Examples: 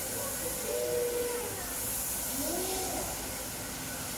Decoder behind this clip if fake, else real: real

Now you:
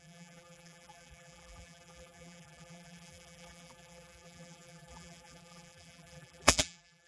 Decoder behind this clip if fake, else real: fake, vocoder, BigVGAN v2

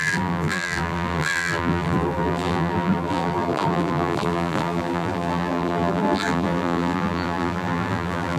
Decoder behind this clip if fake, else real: fake, vocoder, BigVGAN v2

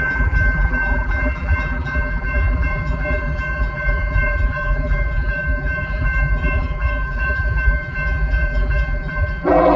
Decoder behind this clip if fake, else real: fake, vocoder, BigVGAN v2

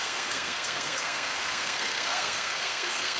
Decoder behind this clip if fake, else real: fake, codec, SNAC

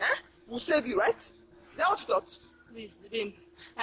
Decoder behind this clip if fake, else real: real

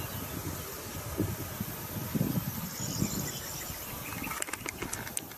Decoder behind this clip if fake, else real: real